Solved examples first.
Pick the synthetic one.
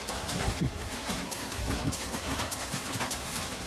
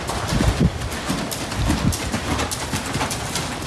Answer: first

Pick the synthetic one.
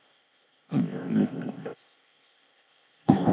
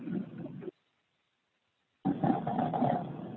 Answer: first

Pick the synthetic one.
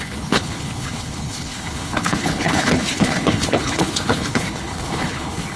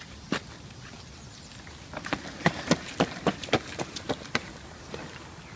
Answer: first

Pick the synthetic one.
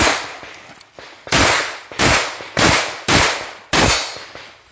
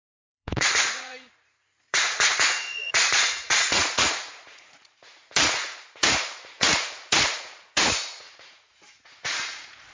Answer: second